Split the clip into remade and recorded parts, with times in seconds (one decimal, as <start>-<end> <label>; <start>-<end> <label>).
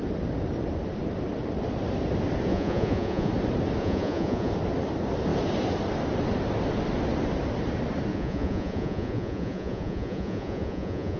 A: 0.0-2.5 recorded; 2.5-3.3 remade; 3.3-3.8 recorded; 3.8-4.5 remade; 4.5-8.1 recorded; 8.1-11.2 remade